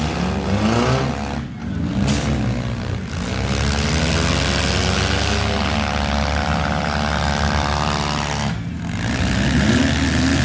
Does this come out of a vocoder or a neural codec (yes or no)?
no